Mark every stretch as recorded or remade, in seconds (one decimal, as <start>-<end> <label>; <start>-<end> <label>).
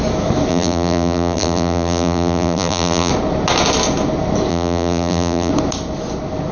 0.0-0.5 recorded; 0.5-3.1 remade; 3.1-4.5 recorded; 4.5-5.5 remade; 5.5-6.5 recorded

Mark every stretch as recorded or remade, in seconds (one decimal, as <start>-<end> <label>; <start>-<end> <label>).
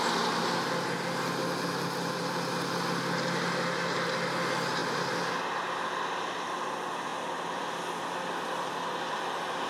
0.0-7.1 recorded; 7.1-9.1 remade; 9.1-9.7 recorded